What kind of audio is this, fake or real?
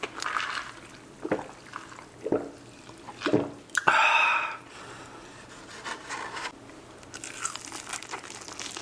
real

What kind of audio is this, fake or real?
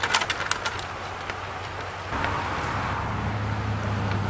real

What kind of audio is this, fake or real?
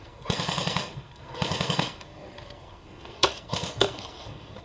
fake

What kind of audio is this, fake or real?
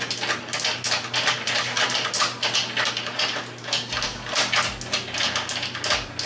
real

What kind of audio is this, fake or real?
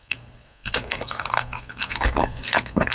fake